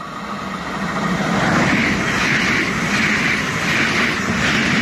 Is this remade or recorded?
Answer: recorded